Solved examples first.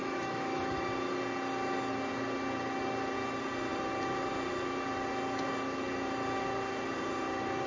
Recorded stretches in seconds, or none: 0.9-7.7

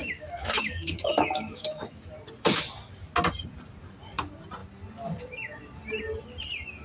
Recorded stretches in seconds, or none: 2.1-6.8

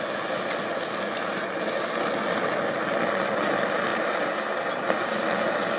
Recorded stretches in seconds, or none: 0.0-5.8

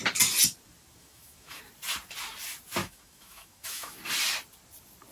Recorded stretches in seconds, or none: 0.0-1.0; 1.6-2.8; 4.0-5.1

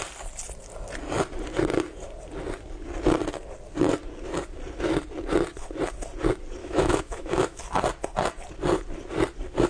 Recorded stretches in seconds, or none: 0.0-6.6; 7.6-9.7

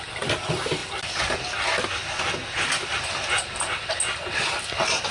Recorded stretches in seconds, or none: 0.0-5.1

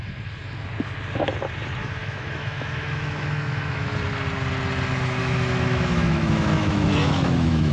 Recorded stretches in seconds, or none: 0.0-2.0; 3.9-5.2

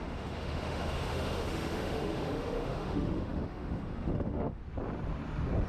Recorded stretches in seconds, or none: 4.6-5.7